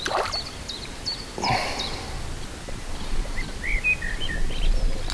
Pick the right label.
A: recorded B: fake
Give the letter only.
A